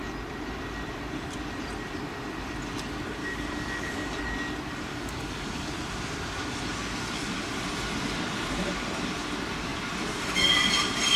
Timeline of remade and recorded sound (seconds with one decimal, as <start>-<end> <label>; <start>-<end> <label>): 0.0-3.2 recorded; 3.2-4.2 remade; 4.2-4.9 recorded; 4.9-5.7 remade; 5.7-11.2 recorded